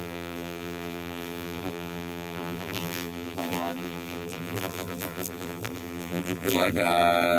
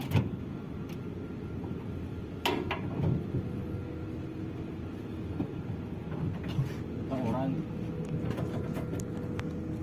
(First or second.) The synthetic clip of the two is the first